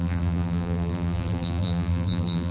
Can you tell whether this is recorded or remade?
remade